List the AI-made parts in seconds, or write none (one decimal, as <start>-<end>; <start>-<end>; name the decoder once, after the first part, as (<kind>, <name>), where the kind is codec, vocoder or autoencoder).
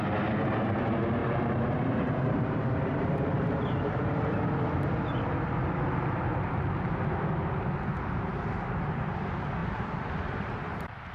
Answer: 1.2-3.5 (vocoder, BigVGAN v2); 9.6-11.1